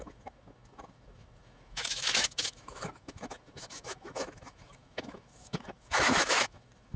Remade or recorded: remade